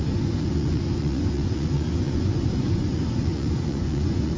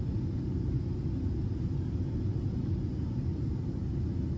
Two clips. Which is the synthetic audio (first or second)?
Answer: first